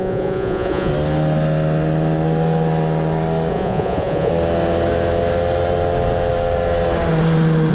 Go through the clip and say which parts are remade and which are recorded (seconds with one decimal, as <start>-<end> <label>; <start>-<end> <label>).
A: 0.0-0.9 remade; 0.9-3.5 recorded; 3.5-4.3 remade; 4.3-7.7 recorded